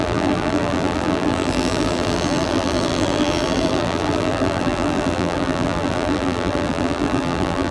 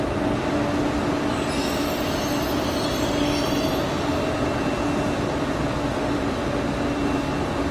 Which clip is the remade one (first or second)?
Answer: first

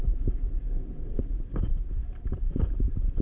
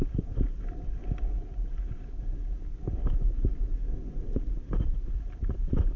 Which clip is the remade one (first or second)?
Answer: first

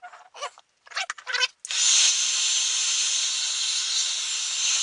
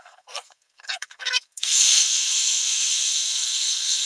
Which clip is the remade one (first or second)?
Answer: second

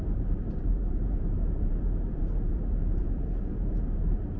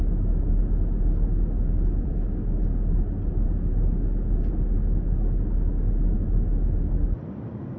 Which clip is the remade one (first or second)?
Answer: first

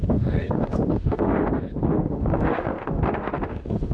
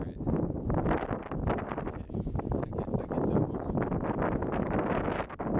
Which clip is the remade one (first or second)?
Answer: first